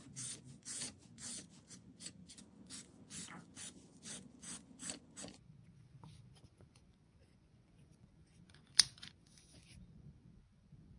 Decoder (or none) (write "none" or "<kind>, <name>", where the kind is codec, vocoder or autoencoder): vocoder, Vocos